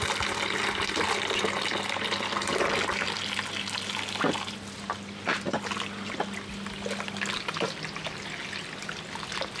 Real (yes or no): yes